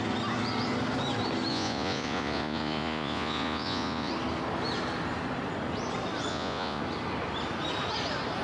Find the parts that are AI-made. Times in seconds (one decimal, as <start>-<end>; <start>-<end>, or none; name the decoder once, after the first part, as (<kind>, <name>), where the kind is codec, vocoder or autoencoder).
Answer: 1.5-4.1 (vocoder, Vocos); 6.3-6.8